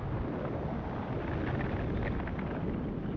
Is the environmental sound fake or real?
real